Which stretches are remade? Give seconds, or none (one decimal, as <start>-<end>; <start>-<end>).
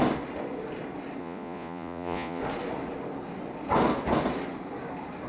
1.2-2.4